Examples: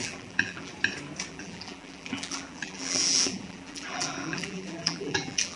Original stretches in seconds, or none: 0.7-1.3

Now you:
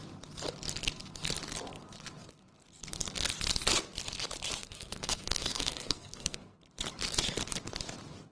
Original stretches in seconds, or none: 0.0-4.6; 6.6-8.3

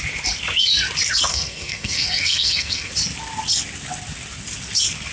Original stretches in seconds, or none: 0.0-1.3; 2.9-5.1